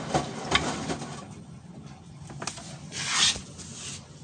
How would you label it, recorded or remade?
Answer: recorded